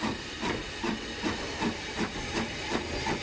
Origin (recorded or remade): recorded